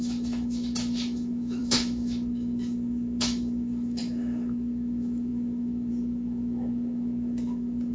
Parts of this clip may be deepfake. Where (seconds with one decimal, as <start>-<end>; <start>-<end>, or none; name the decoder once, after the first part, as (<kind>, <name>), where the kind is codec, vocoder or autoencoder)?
0.0-7.9 (autoencoder, DAC-VAE)